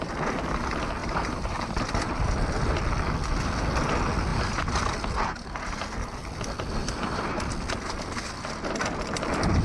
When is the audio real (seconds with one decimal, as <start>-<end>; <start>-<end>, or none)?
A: 0.0-1.0; 1.8-4.3; 4.8-6.8; 7.5-9.6